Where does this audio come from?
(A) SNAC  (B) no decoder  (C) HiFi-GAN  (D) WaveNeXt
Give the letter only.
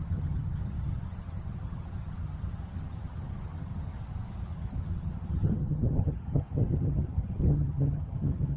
C